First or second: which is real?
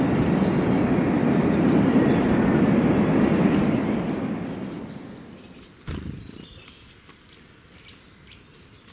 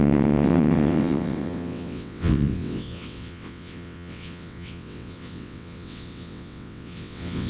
first